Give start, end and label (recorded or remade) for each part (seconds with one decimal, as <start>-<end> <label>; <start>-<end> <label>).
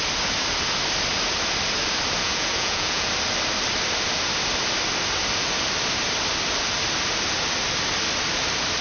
0.0-2.2 recorded; 2.2-3.1 remade; 3.1-8.8 recorded